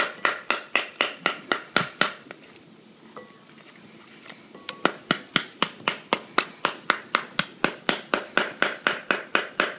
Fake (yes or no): no